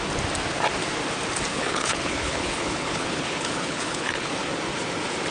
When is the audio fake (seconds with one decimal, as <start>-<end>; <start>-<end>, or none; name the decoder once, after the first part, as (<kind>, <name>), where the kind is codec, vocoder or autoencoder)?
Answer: 1.5-4.3 (codec, HILCodec)

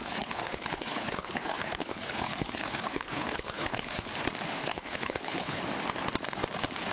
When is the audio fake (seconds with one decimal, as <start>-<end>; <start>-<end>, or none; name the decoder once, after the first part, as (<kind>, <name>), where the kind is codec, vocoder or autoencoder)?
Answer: 0.0-4.1 (codec, HILCodec); 4.6-5.6

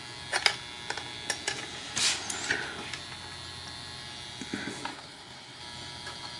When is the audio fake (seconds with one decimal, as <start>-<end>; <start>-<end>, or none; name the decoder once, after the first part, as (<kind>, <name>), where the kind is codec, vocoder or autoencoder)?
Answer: 4.9-5.6 (codec, HILCodec)

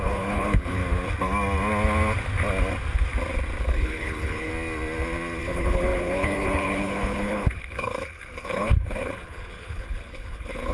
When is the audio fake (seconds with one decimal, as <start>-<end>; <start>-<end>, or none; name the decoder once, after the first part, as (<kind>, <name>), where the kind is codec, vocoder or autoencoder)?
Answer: 0.0-0.8 (codec, HILCodec); 3.6-4.5; 5.4-10.7

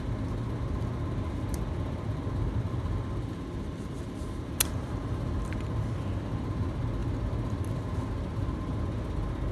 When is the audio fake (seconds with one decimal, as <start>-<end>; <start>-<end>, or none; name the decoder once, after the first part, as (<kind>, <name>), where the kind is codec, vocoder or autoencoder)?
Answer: none

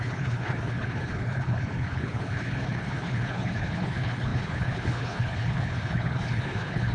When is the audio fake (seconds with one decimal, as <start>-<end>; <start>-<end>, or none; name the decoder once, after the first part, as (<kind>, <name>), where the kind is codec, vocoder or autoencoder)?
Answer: 0.0-6.9 (codec, HILCodec)

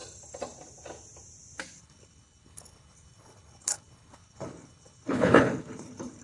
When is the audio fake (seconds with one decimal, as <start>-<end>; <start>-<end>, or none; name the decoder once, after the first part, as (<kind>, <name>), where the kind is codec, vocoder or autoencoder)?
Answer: 1.8-6.2 (codec, HILCodec)

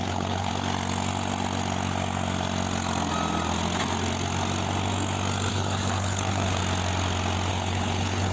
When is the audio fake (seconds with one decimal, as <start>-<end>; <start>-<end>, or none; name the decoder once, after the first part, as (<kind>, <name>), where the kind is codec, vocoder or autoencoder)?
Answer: 0.0-0.5 (codec, HILCodec); 5.5-6.6; 7.5-8.3